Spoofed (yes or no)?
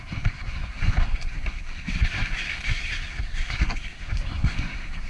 yes